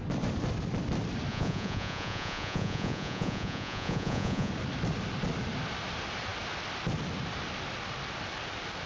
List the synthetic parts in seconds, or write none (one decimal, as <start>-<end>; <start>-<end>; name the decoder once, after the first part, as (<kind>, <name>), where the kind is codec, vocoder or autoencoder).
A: 1.3-4.5 (vocoder, Vocos)